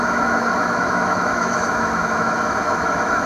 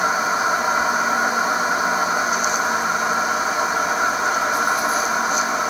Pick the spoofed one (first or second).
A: first